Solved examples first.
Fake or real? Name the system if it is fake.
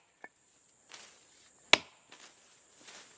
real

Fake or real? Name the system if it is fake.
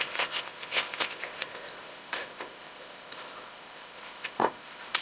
fake, codec, ZipCodec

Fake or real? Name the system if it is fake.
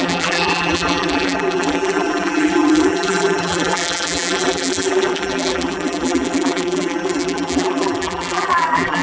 fake, vocoder, BigVGAN v2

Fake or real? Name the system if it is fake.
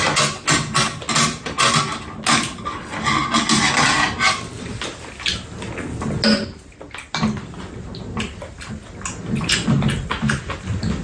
real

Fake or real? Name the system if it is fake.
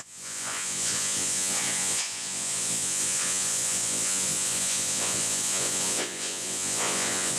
fake, vocoder, Vocos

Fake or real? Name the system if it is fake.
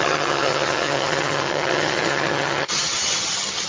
fake, vocoder, HiFi-GAN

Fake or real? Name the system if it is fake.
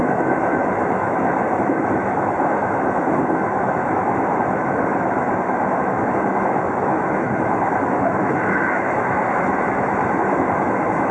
fake, autoencoder, DAC-VAE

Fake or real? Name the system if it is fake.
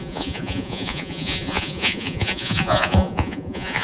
fake, vocoder, Vocos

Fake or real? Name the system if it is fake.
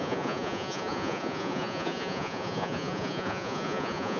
fake, vocoder, Vocos